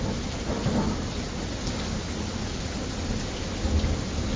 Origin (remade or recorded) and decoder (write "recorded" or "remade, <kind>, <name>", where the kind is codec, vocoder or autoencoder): recorded